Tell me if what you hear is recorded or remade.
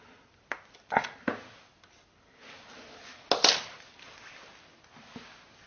recorded